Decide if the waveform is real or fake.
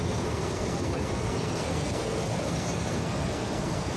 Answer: fake